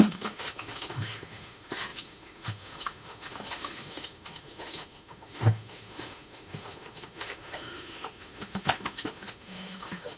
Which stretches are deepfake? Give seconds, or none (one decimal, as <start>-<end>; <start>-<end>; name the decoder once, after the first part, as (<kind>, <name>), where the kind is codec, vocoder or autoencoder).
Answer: 0.0-10.2 (autoencoder, DAC-VAE)